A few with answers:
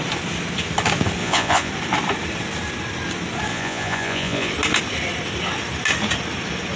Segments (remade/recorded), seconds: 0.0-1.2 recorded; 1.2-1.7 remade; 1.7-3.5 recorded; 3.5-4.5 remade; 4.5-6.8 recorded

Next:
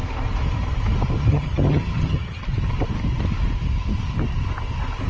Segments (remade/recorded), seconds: 0.0-1.2 recorded; 1.2-2.4 remade; 2.4-5.1 recorded

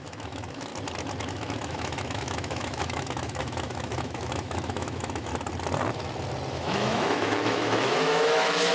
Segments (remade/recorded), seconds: 0.0-0.7 remade; 0.7-1.2 recorded; 1.2-5.3 remade; 5.3-6.5 recorded; 6.5-8.7 remade

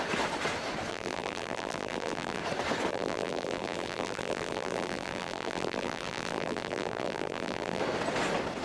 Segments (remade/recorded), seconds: 0.0-0.9 recorded; 0.9-2.4 remade; 2.4-2.9 recorded; 2.9-7.8 remade; 7.8-8.6 recorded

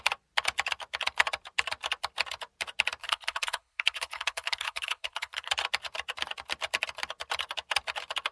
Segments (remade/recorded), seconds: 0.0-3.0 recorded; 3.0-5.5 remade; 5.5-8.3 recorded

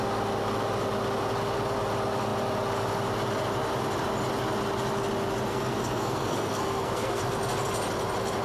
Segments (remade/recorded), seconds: 0.0-5.5 recorded; 5.5-7.2 remade; 7.2-8.4 recorded

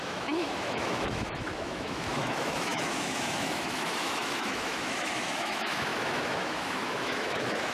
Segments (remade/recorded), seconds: 0.0-7.7 remade